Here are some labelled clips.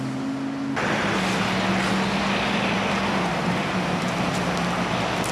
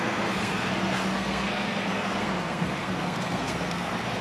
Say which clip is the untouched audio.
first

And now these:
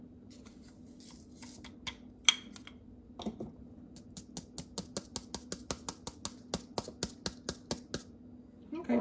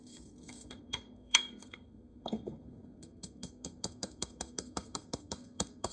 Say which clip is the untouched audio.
first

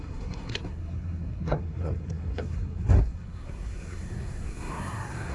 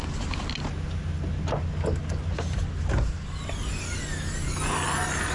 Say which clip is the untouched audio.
second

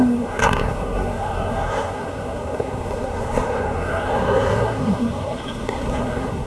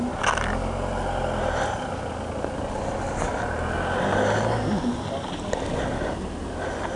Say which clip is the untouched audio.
second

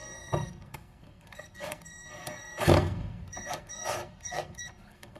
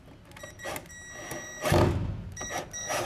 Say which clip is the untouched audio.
second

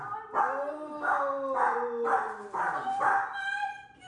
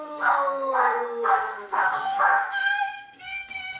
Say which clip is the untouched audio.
first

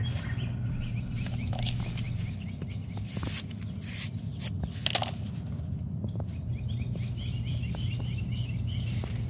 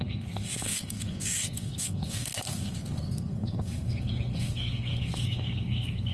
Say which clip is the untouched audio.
first